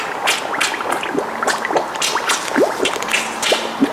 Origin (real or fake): real